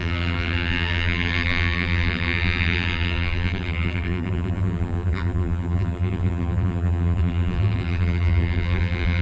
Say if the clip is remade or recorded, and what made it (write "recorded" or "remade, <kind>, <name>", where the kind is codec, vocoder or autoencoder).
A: remade, vocoder, BigVGAN v2